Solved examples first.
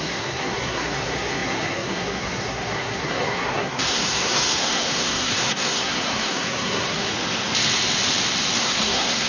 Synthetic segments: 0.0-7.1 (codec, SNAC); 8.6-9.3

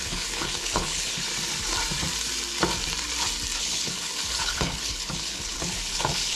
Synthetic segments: 0.0-1.3 (codec, HILCodec); 3.6-6.3

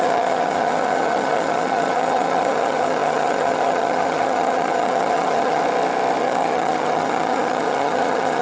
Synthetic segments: 0.0-5.6 (vocoder, HiFi-GAN); 6.2-8.4

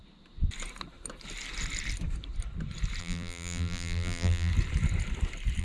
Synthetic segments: 3.0-4.5 (vocoder, BigVGAN v2)

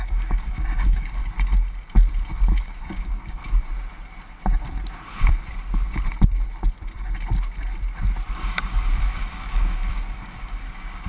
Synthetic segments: 0.0-1.2 (codec, DAC); 2.3-3.4; 8.3-11.1